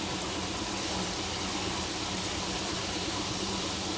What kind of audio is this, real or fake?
real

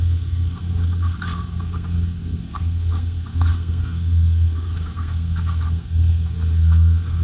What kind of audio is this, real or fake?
fake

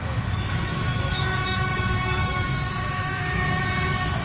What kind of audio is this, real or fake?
fake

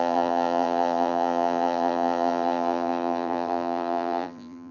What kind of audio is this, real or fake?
fake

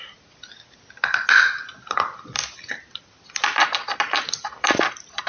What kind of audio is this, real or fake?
real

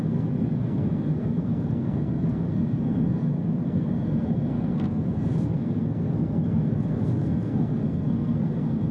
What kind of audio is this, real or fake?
fake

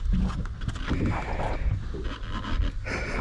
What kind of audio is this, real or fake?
real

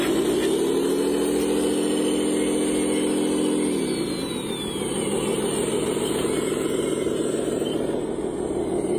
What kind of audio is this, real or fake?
real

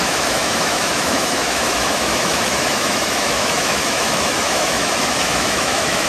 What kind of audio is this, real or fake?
fake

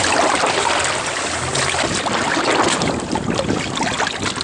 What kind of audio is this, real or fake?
real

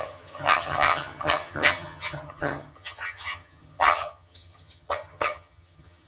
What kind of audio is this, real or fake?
fake